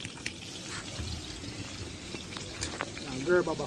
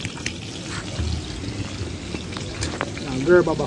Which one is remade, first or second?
first